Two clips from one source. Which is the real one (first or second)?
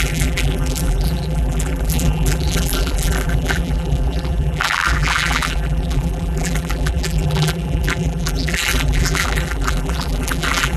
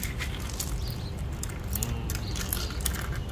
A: second